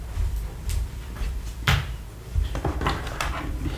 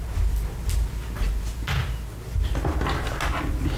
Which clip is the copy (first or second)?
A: first